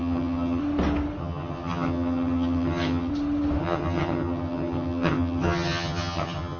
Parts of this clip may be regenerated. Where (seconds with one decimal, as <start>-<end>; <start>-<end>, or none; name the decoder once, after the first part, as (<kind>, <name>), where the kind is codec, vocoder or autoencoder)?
0.0-0.6 (vocoder, HiFi-GAN); 1.2-3.1; 3.6-6.6